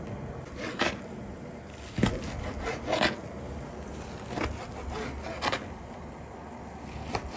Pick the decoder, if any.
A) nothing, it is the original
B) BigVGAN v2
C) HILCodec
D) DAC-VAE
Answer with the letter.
A